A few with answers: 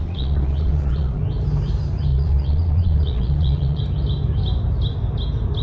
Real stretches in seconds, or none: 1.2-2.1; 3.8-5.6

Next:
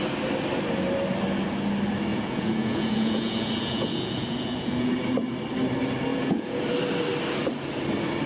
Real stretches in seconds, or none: 0.0-2.1; 4.9-6.1; 6.6-8.3